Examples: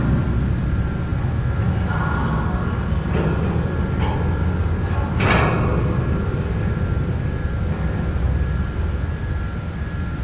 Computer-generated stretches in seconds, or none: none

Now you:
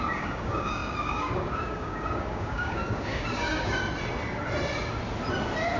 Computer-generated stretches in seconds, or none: 0.0-3.8 (codec, DAC)

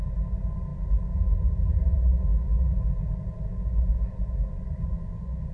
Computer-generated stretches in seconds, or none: 4.4-5.5 (vocoder, Vocos)

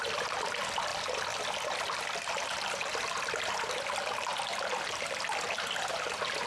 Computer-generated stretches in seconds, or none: none

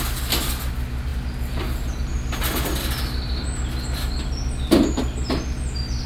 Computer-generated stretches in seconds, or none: none

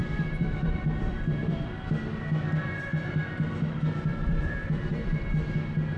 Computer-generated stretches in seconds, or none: 0.0-1.7 (vocoder, BigVGAN v2); 4.1-5.2

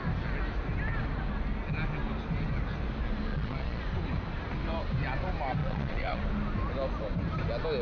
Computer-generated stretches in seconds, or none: 3.3-3.8 (vocoder, Vocos); 5.6-6.2